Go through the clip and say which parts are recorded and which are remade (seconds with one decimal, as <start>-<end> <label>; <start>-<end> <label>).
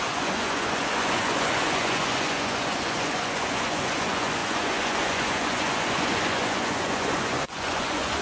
0.0-8.2 remade